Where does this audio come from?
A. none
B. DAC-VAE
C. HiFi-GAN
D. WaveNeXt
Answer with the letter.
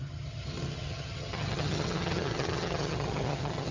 C